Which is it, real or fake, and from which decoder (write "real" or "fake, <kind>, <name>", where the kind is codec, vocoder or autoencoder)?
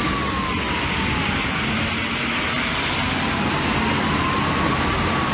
real